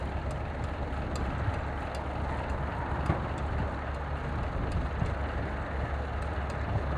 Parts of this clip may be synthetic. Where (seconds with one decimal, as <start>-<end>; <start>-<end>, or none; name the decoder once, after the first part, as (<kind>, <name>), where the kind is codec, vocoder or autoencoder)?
none